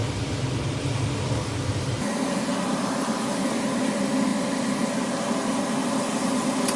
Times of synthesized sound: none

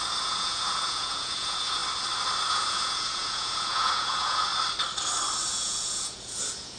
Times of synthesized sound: 0.0-1.8 (vocoder, Vocos); 2.5-4.5; 5.4-6.8

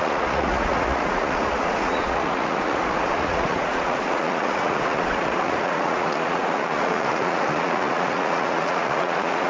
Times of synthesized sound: 0.0-9.5 (vocoder, Vocos)

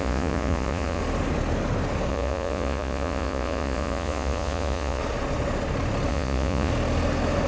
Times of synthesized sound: 0.0-1.0 (vocoder, Vocos); 2.1-5.0; 6.1-6.7

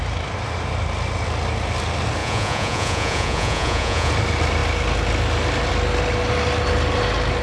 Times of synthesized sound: 2.2-4.1 (vocoder, Vocos)